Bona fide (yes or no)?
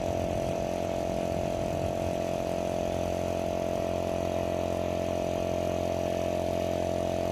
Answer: yes